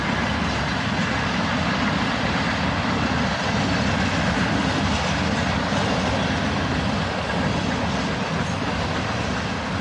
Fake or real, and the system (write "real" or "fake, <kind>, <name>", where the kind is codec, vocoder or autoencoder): real